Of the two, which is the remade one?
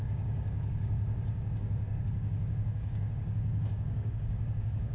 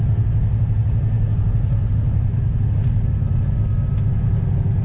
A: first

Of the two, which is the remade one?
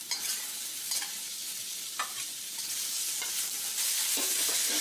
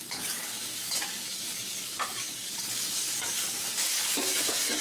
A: second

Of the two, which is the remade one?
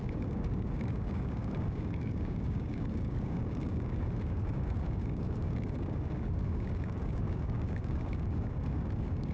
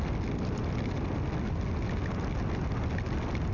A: first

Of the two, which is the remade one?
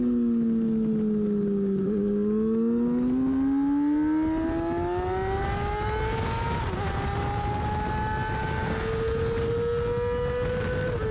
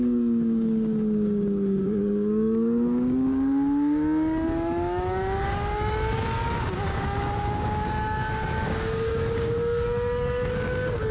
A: second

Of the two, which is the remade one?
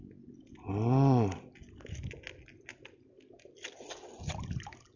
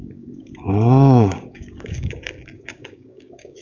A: second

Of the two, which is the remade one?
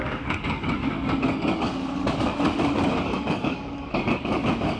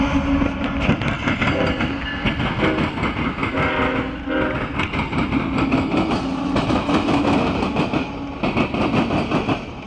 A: first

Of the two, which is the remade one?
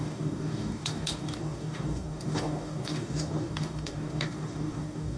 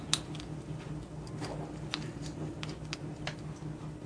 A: first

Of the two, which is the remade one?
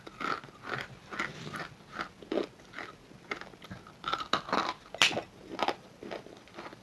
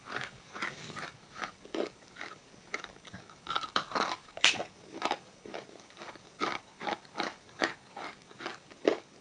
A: second